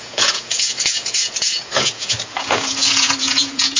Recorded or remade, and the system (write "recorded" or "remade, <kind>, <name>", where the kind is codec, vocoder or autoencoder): remade, vocoder, Vocos